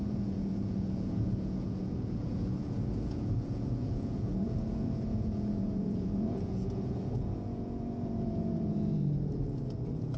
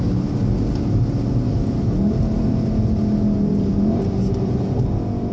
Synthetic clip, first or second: first